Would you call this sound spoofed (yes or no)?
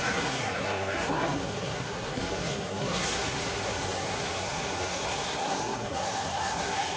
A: yes